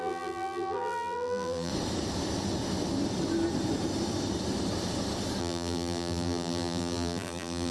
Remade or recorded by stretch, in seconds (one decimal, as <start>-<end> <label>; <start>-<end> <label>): 0.0-1.7 remade; 1.7-5.4 recorded; 5.4-7.7 remade